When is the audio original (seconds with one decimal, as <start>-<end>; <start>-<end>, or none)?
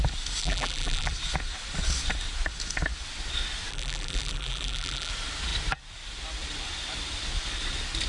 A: 0.0-0.4; 1.1-3.7; 5.1-8.1